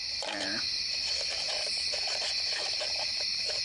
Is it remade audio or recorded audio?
remade